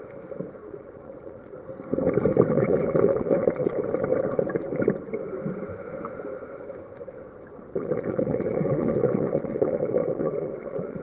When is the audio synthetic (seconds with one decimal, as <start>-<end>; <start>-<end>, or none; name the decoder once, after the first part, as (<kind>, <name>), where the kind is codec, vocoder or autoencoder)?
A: 0.6-1.6 (vocoder, Vocos); 2.5-3.7; 7.7-11.0